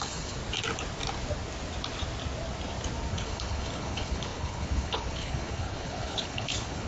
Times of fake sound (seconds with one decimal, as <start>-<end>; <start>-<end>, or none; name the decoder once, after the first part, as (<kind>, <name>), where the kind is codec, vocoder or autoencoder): 0.0-0.4 (codec, HILCodec); 3.1-6.9